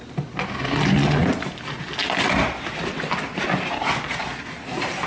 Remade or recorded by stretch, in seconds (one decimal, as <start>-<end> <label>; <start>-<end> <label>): 0.0-5.1 recorded